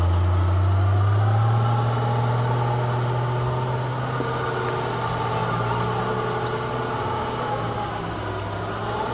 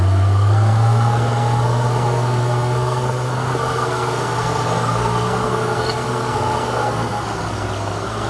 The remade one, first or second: second